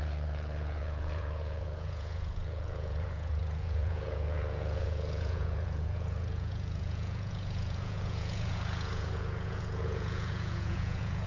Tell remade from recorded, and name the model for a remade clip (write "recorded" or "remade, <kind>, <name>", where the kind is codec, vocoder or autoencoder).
remade, vocoder, Vocos